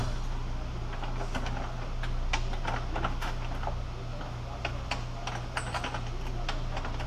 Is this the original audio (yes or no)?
yes